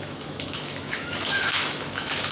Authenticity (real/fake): fake